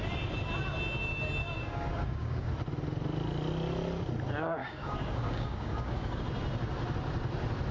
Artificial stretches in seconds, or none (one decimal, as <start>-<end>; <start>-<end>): 1.4-2.5; 4.6-6.2